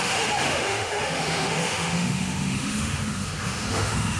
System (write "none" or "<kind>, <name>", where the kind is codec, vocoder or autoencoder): autoencoder, DAC-VAE